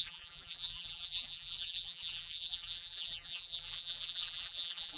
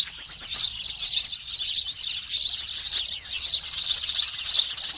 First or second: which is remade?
first